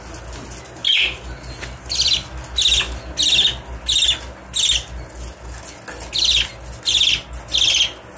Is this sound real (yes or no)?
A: yes